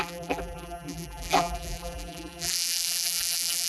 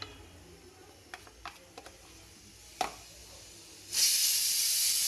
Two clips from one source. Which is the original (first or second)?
second